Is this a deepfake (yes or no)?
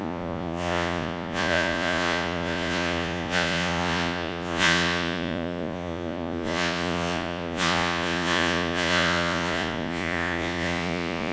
yes